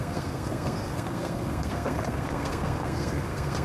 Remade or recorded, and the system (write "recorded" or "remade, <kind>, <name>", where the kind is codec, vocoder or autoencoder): remade, codec, SNAC